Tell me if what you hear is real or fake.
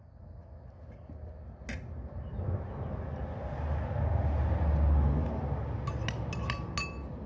real